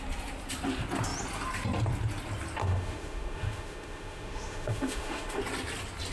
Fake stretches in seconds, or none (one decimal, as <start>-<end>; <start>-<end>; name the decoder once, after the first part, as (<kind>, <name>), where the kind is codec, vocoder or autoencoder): 2.6-5.4 (autoencoder, DAC-VAE)